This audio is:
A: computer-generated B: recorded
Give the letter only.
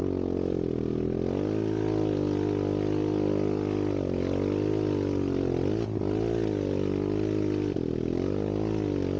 B